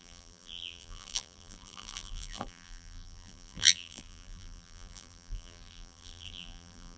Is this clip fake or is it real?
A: fake